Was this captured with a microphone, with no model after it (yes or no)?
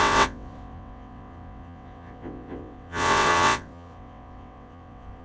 no